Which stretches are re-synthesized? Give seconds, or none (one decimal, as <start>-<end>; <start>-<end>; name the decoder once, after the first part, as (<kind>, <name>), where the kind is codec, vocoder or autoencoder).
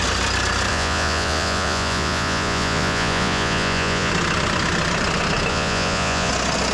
0.7-4.1 (vocoder, Vocos); 5.5-6.3